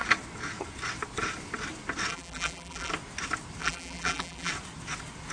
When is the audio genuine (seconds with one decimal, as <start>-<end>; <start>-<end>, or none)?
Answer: 0.0-2.1; 2.9-3.6; 4.5-5.3